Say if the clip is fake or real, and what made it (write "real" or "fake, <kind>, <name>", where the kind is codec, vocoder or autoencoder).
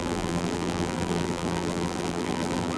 fake, vocoder, BigVGAN v2